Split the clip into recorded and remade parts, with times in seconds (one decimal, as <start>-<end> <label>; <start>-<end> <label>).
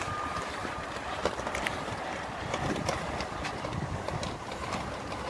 0.0-0.6 recorded; 0.6-3.8 remade; 3.8-5.3 recorded